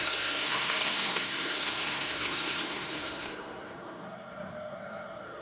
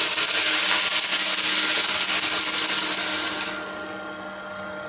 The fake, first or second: first